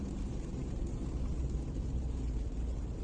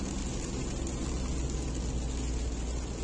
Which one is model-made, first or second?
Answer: first